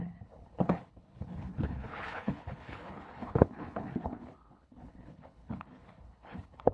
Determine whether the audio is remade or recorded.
remade